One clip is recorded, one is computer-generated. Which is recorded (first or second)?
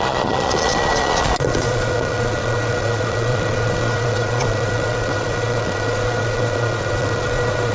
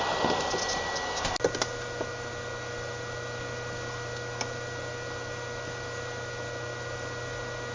second